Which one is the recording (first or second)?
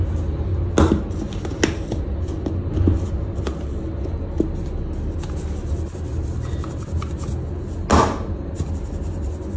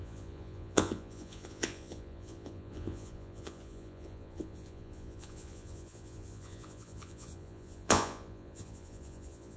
first